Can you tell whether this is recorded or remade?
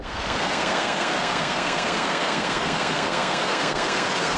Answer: remade